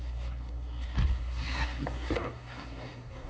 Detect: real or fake fake